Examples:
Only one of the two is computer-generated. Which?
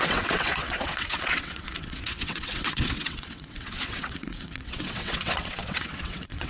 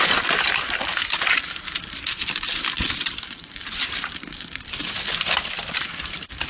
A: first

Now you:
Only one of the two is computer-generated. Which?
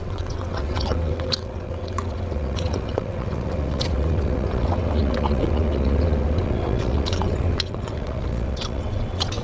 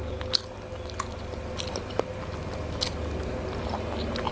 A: first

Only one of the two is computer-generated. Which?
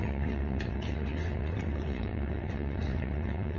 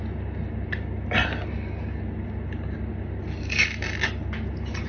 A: first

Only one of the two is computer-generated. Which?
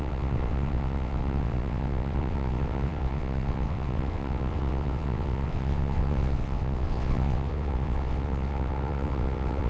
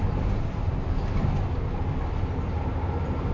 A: first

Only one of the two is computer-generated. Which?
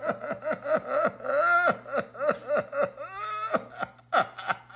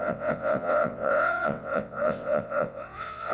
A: second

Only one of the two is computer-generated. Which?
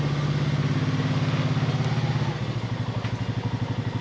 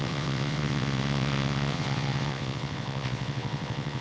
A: second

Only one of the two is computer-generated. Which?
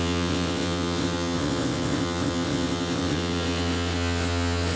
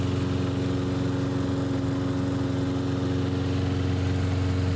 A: first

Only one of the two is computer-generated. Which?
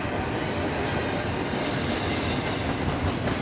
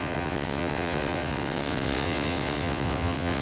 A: second